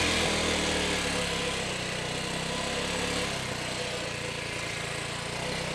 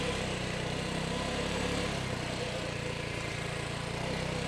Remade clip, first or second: second